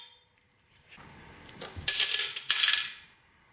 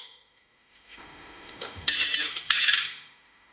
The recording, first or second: first